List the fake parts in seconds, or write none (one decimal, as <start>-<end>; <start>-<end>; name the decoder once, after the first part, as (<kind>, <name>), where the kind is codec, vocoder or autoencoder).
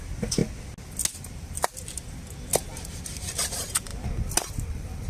0.0-0.4 (vocoder, BigVGAN v2); 1.2-3.9; 4.5-5.1